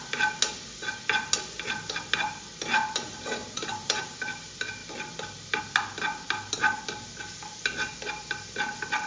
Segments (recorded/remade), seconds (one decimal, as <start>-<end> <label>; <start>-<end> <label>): 0.0-3.4 recorded; 3.4-4.0 remade; 4.0-9.1 recorded